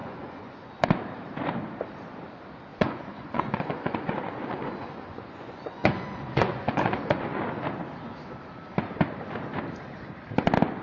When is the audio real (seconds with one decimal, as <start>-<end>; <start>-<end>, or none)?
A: 0.7-2.7; 7.4-10.8